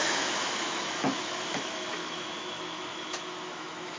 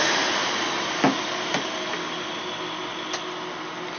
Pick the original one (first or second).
second